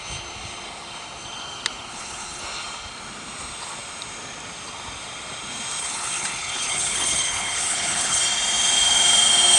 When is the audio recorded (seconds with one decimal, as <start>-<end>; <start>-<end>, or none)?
0.0-1.9; 2.4-5.8; 8.2-9.6

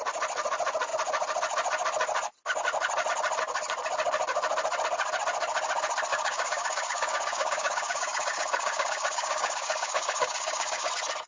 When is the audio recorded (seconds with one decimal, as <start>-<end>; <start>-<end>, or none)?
0.0-6.1; 10.9-11.3

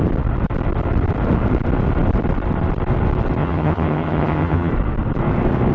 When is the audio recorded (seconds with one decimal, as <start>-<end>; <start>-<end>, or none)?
0.0-3.4; 4.7-5.7

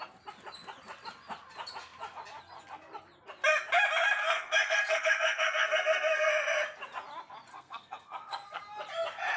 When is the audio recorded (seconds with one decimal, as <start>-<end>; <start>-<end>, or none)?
0.0-4.2; 6.3-7.5; 8.6-9.4